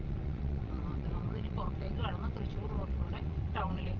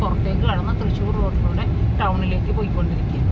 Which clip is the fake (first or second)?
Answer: first